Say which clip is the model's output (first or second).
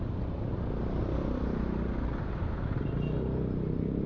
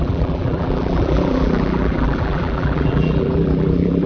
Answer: second